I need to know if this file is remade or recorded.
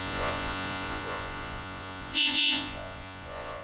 remade